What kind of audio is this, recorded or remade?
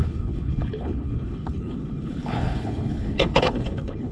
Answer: remade